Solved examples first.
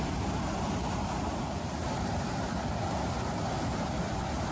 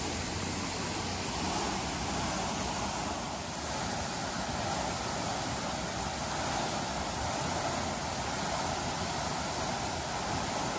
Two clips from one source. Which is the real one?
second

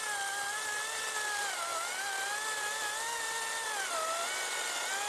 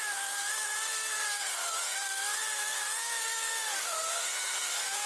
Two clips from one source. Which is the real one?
first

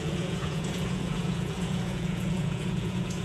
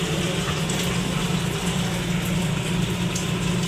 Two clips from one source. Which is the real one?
second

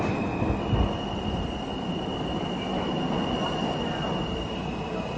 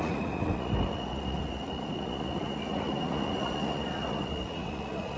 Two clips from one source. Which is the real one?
first